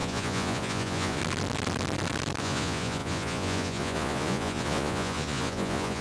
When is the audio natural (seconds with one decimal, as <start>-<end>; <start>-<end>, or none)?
1.2-2.4